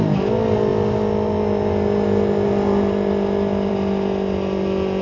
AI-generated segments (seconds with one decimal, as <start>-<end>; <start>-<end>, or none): none